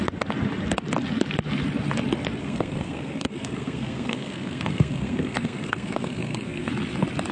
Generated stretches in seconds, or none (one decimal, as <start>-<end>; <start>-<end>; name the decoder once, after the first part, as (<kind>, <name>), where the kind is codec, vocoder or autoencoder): 2.4-6.7 (codec, SNAC)